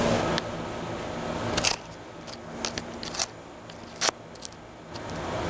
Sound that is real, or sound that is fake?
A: real